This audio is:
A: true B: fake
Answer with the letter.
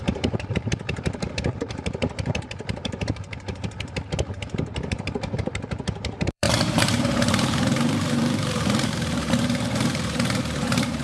B